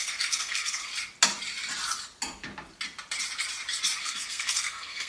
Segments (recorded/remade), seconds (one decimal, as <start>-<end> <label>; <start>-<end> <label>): 0.0-0.9 remade; 0.9-4.0 recorded; 4.0-5.1 remade